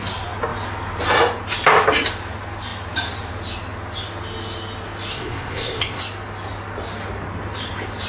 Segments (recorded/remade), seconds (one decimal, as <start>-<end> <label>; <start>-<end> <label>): 0.0-5.1 recorded; 5.1-6.0 remade; 6.0-8.1 recorded